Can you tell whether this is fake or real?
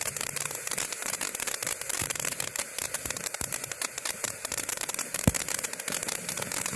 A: fake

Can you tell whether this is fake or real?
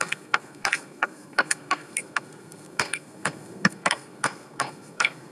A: fake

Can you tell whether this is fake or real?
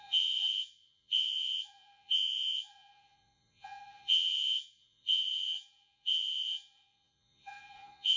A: fake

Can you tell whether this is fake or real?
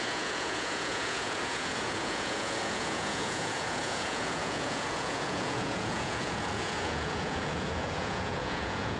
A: fake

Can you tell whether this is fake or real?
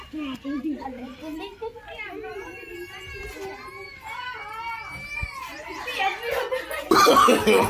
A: real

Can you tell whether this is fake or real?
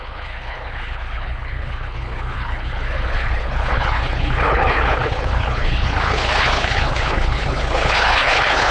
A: fake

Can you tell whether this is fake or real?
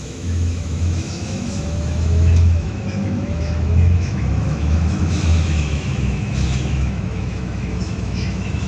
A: fake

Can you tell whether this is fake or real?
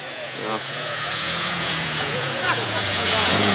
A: fake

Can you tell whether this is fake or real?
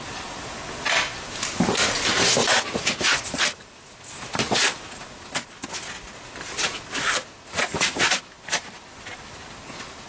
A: real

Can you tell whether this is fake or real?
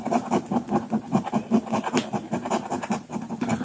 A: fake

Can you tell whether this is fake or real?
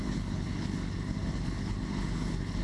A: fake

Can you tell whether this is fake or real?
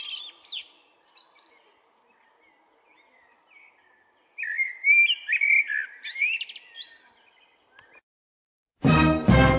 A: real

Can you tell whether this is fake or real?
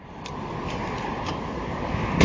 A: real